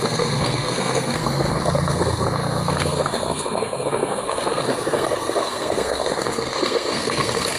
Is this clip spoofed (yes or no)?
yes